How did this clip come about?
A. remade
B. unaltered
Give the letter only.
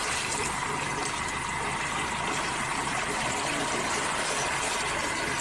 B